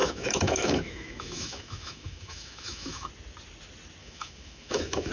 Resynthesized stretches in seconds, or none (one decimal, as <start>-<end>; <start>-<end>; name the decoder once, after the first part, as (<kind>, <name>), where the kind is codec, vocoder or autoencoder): 0.0-3.1 (autoencoder, DAC-VAE); 4.0-5.1